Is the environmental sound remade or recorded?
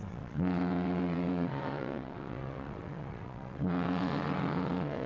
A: remade